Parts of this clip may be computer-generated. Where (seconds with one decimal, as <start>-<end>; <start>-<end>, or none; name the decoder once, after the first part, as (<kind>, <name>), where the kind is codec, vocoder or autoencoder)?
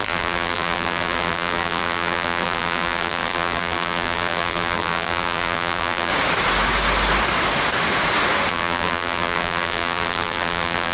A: 0.0-6.1 (vocoder, BigVGAN v2); 8.5-10.9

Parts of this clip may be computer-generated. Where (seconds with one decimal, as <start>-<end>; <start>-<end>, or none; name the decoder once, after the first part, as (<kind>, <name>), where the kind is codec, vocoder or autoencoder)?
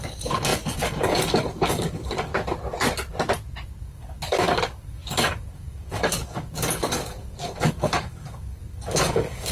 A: 0.0-2.3 (codec, DAC); 3.8-9.5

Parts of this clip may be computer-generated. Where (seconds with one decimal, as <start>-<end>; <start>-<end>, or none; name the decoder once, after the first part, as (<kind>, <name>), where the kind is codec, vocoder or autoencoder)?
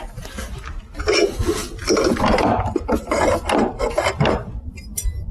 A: none